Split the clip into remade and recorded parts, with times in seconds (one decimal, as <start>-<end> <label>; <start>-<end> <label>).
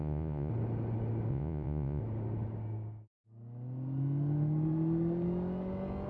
0.0-0.5 remade; 0.5-1.3 recorded; 1.3-2.0 remade; 2.0-6.1 recorded